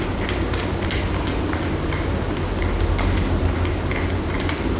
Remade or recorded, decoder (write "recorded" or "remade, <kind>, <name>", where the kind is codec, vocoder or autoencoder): recorded